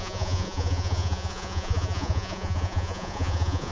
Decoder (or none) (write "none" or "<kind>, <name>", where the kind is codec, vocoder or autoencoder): vocoder, Vocos